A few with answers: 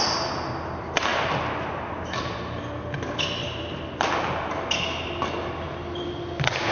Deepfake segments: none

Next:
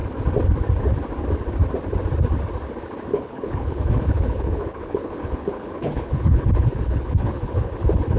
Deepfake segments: 3.1-7.7 (codec, HILCodec)

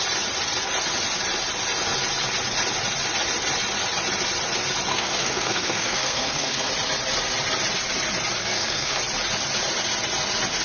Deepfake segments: 4.9-6.7 (codec, SNAC); 8.4-9.0

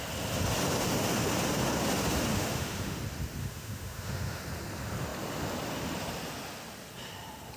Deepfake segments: 2.3-3.0 (autoencoder, DAC-VAE); 3.4-4.4

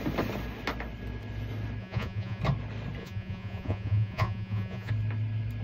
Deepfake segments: 1.8-2.4 (vocoder, Vocos); 3.0-4.9